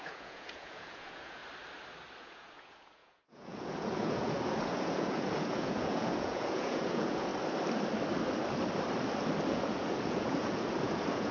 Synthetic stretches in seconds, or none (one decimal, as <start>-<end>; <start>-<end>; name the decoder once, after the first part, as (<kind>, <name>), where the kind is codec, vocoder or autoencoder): 0.0-1.4 (vocoder, Vocos); 2.2-7.3; 9.5-11.3